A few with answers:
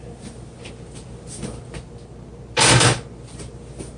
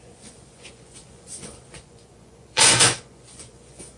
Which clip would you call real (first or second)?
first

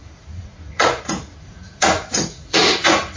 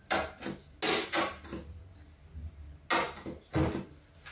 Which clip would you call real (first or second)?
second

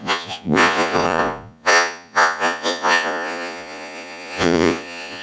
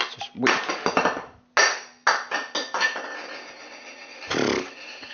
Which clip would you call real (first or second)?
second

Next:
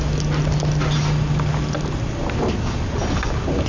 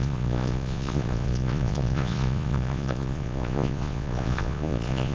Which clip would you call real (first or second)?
first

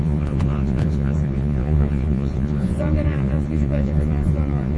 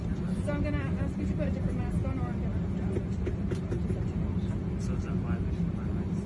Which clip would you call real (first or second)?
second